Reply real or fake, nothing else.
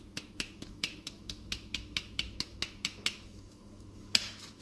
fake